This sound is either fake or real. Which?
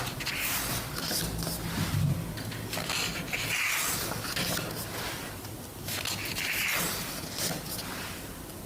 real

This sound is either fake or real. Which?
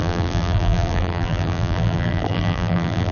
fake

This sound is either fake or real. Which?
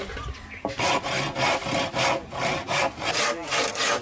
real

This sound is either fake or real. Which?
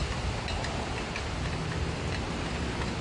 real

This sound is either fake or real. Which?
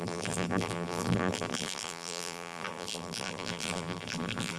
fake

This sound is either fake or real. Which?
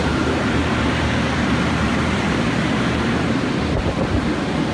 fake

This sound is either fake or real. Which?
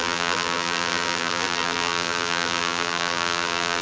fake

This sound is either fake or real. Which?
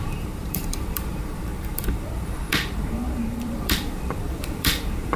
fake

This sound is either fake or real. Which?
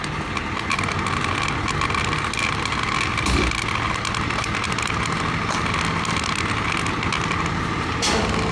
real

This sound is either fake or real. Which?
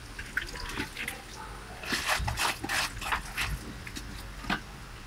real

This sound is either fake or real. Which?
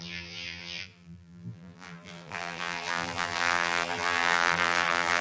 fake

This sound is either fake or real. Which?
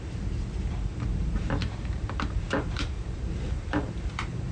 fake